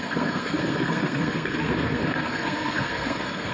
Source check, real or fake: fake